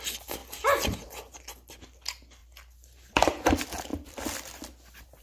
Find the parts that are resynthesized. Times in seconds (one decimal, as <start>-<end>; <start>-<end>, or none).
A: 2.4-3.5